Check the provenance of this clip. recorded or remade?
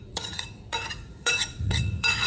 remade